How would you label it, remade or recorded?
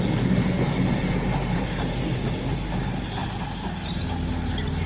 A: recorded